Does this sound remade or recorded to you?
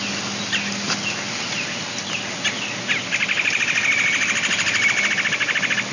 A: recorded